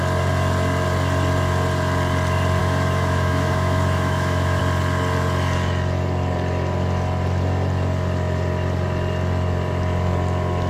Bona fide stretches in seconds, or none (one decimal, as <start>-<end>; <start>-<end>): 0.0-2.6; 4.6-10.7